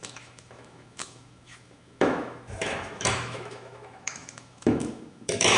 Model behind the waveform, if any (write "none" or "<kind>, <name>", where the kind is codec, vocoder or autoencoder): autoencoder, DAC-VAE